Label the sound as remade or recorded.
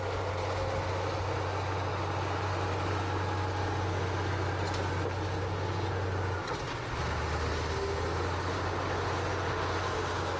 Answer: recorded